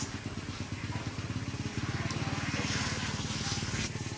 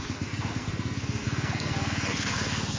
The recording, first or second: first